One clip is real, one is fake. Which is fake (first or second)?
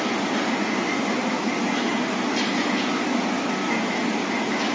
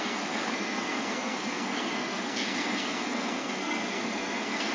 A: second